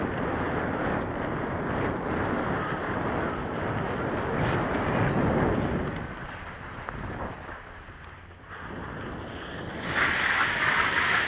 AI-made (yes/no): no